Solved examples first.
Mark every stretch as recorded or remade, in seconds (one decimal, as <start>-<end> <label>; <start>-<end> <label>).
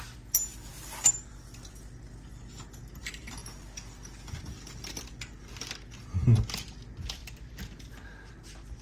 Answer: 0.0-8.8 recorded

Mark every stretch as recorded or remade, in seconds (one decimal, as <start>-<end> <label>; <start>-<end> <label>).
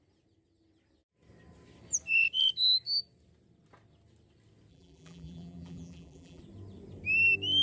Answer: 0.0-4.7 recorded; 4.7-6.4 remade; 6.4-7.6 recorded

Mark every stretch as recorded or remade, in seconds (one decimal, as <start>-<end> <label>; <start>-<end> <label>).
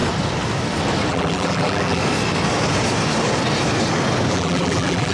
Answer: 0.0-1.1 recorded; 1.1-2.0 remade; 2.0-4.3 recorded; 4.3-5.1 remade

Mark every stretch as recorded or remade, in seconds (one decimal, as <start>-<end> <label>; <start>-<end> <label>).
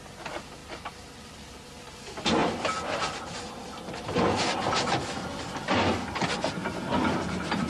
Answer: 0.0-0.6 recorded; 0.6-1.6 remade; 1.6-2.4 recorded; 2.4-4.0 remade; 4.0-7.7 recorded